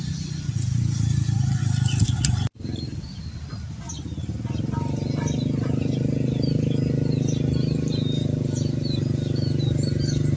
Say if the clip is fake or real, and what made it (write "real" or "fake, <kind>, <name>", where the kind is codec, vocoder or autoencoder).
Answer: real